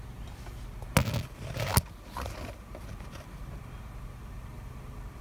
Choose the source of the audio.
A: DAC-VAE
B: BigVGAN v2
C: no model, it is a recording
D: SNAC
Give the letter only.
C